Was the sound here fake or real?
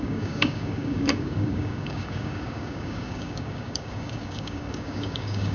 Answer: fake